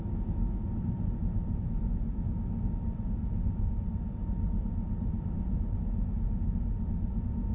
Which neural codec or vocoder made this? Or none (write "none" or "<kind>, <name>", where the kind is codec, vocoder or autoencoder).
vocoder, BigVGAN v2